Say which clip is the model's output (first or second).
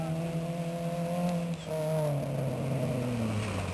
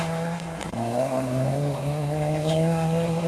second